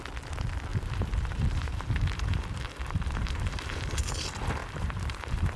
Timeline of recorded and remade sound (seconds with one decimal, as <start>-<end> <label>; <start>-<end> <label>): 0.0-0.7 recorded; 0.7-4.1 remade; 4.1-4.6 recorded; 4.6-5.6 remade